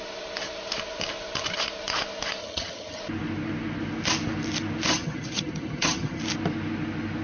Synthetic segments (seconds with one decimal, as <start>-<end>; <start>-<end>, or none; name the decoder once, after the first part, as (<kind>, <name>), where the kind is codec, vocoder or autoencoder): 2.4-3.0 (vocoder, HiFi-GAN); 4.9-6.2